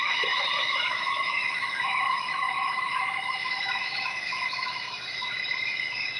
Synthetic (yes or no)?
yes